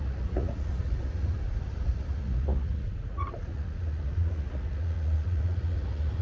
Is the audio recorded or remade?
remade